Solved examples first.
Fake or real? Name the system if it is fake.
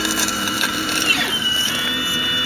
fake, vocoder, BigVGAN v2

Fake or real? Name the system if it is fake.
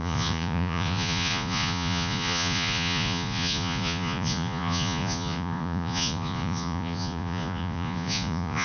fake, vocoder, Vocos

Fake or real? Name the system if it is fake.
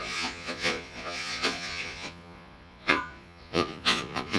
fake, vocoder, Vocos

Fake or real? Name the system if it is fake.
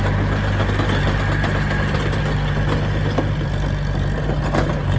real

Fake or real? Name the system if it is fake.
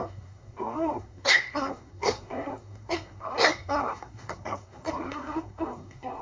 fake, codec, SNAC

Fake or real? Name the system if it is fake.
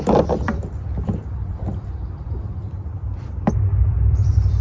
fake, vocoder, BigVGAN v2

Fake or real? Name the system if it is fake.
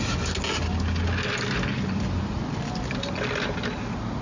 real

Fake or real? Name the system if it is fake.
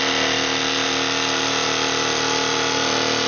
real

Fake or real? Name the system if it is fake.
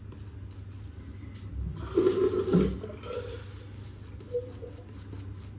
real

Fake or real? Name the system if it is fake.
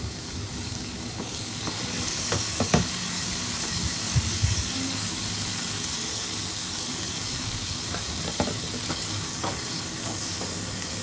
fake, codec, DAC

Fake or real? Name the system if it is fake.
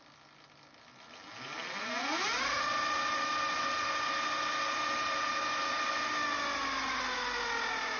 real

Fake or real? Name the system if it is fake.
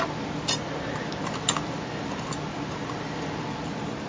real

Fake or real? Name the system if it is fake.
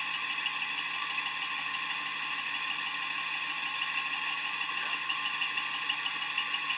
real